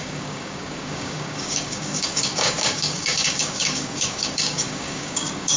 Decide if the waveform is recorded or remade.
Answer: remade